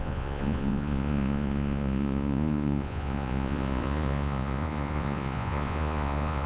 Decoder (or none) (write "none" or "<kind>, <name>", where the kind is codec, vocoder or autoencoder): vocoder, Vocos